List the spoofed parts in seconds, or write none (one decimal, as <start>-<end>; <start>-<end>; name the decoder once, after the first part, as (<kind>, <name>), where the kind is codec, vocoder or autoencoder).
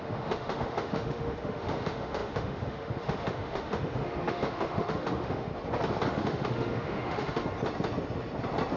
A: 0.0-5.5 (autoencoder, DAC-VAE); 6.1-7.4